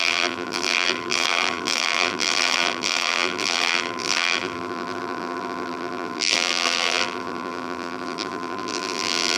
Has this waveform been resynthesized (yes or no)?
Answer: yes